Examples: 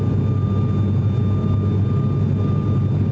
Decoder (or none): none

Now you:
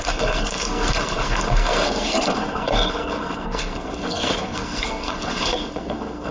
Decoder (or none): codec, SNAC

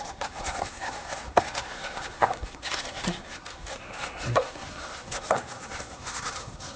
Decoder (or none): codec, SNAC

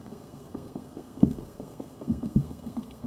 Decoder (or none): codec, SNAC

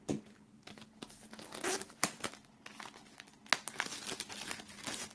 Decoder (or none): none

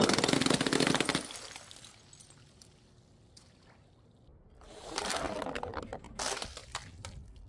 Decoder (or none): none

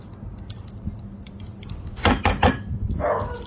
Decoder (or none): none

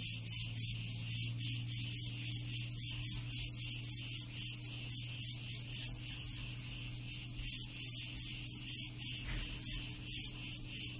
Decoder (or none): none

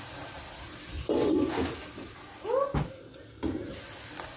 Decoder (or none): none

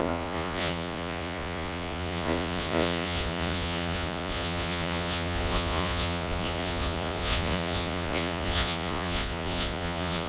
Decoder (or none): vocoder, Vocos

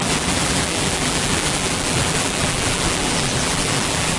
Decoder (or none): vocoder, BigVGAN v2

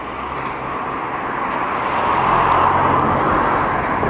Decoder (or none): none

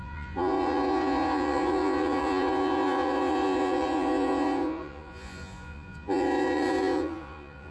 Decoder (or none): vocoder, Vocos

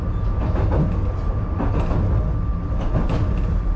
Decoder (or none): none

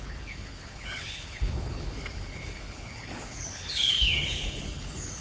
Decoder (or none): codec, HILCodec